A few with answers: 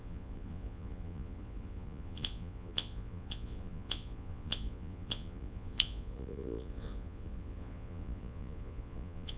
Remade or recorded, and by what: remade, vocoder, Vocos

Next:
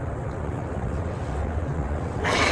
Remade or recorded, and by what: remade, vocoder, WaveNeXt